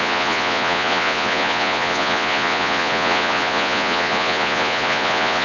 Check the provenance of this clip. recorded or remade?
remade